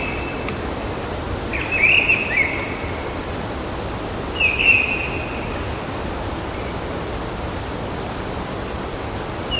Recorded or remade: recorded